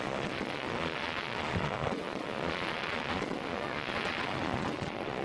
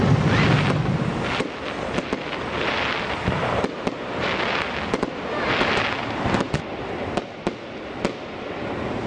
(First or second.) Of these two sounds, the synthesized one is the first